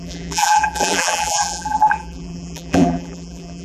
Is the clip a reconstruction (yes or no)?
yes